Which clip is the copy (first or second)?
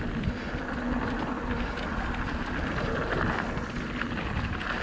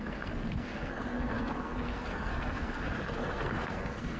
second